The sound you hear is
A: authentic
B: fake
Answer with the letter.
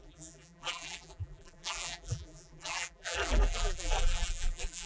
B